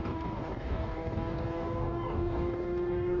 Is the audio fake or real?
fake